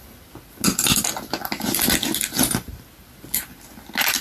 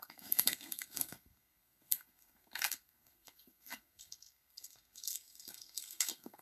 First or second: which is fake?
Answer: second